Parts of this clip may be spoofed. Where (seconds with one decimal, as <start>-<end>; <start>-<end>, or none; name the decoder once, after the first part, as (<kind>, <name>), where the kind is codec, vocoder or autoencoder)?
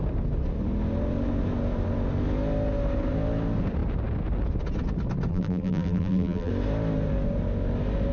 5.3-6.5 (vocoder, BigVGAN v2)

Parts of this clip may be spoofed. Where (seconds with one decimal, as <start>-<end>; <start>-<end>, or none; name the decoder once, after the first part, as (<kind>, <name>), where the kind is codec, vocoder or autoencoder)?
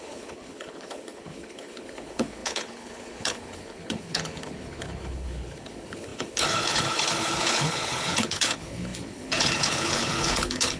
0.0-10.8 (codec, HILCodec)